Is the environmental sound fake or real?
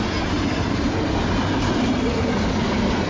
real